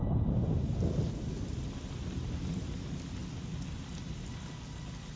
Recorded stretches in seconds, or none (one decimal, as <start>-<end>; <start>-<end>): 0.0-5.2